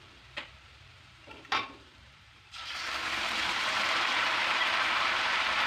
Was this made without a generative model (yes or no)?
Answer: no